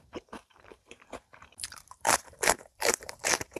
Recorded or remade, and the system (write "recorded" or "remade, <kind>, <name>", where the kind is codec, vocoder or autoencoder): remade, vocoder, BigVGAN v2